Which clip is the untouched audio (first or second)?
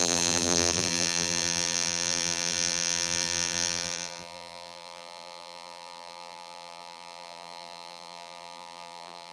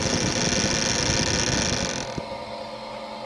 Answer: second